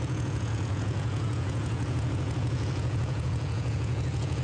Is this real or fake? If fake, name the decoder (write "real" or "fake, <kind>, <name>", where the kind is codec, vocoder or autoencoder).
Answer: fake, vocoder, Vocos